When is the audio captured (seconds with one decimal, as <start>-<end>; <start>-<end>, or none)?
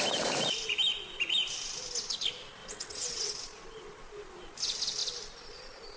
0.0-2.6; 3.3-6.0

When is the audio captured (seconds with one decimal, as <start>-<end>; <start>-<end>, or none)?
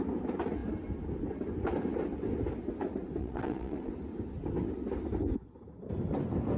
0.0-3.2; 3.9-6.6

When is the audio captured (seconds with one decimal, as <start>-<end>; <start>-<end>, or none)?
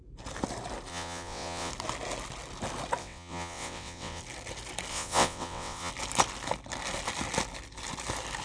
0.0-0.9; 1.7-3.0; 4.2-4.9; 5.9-8.4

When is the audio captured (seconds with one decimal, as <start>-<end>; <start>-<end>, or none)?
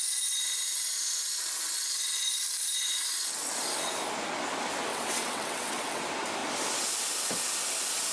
0.0-4.9; 6.0-8.1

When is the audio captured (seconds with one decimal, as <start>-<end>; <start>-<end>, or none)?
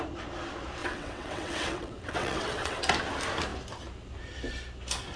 0.0-0.8; 2.8-5.2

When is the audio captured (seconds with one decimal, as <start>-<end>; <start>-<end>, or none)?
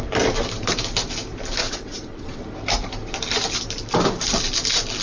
0.0-1.6; 2.4-5.0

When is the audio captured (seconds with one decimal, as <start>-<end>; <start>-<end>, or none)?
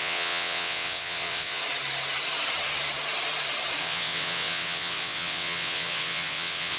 1.6-3.8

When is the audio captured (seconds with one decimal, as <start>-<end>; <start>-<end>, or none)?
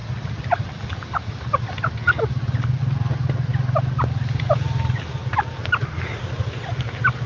0.0-7.3